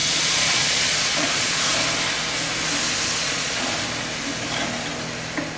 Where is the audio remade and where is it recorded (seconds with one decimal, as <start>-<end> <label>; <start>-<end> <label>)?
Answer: 0.0-1.6 remade; 1.6-3.2 recorded; 3.2-3.7 remade; 3.7-5.6 recorded

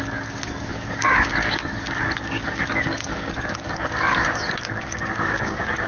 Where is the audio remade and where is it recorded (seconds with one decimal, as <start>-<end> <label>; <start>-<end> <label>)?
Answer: 0.0-5.9 remade

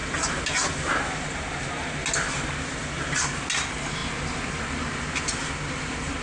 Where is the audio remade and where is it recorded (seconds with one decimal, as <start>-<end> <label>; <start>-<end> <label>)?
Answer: 0.0-6.2 recorded

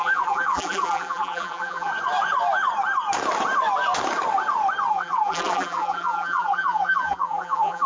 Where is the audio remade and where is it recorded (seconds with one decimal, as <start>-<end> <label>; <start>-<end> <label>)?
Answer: 0.0-1.9 remade; 1.9-4.9 recorded; 4.9-7.9 remade

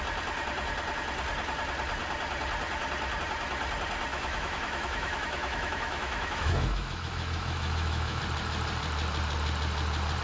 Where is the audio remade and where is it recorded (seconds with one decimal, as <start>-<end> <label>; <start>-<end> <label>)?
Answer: 0.0-4.1 recorded; 4.1-8.2 remade; 8.2-10.2 recorded

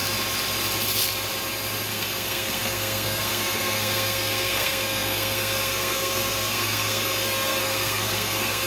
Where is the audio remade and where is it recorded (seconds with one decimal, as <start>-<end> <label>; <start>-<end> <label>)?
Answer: 0.0-1.9 recorded; 1.9-8.7 remade

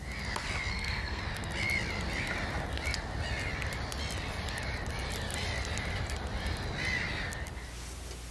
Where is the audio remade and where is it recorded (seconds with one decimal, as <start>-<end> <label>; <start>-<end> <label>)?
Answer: 0.0-0.7 recorded; 0.7-1.2 remade; 1.2-8.3 recorded